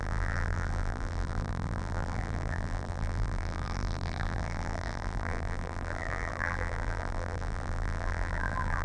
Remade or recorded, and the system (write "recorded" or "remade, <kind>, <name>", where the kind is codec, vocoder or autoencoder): remade, vocoder, BigVGAN v2